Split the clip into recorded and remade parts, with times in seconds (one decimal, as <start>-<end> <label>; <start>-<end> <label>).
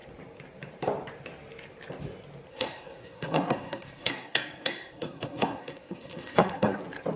0.0-2.5 recorded; 2.5-6.8 remade; 6.8-7.2 recorded